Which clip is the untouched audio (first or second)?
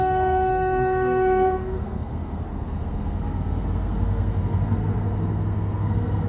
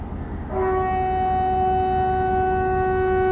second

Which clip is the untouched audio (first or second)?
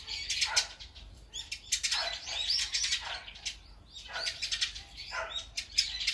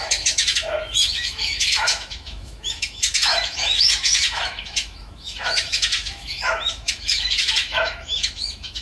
first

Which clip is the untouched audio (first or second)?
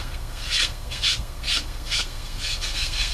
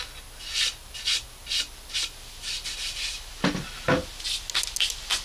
second